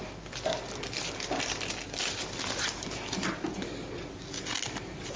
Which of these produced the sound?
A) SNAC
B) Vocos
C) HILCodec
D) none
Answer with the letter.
D